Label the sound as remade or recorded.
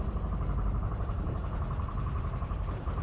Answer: remade